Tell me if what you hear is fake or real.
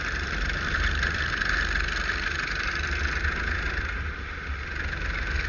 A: real